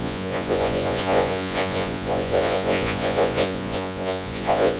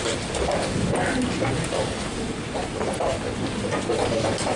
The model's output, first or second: first